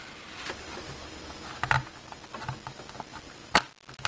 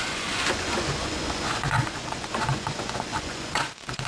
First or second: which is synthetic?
second